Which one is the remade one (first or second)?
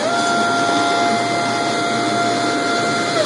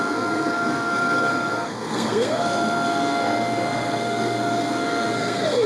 second